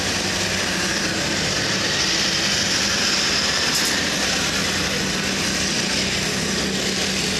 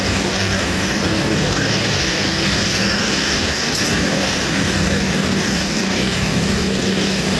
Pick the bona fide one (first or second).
first